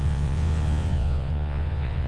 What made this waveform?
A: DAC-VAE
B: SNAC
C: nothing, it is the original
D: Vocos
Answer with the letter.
D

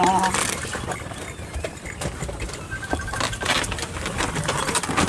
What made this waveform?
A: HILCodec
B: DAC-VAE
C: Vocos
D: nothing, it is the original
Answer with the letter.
D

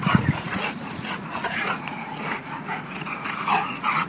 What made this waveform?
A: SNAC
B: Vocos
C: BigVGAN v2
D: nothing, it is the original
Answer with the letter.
B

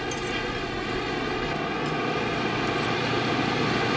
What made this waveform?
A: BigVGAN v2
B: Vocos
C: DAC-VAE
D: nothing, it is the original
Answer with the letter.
D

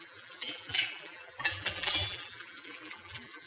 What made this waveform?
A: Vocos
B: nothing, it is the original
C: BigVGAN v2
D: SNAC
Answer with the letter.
C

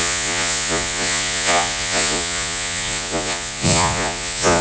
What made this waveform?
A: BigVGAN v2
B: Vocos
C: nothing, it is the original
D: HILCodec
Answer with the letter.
B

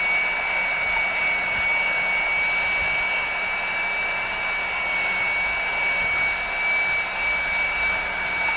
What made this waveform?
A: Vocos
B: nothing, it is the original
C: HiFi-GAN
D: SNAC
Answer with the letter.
B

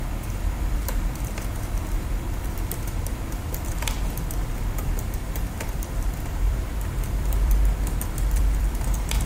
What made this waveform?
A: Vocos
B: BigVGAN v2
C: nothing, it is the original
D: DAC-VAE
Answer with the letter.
B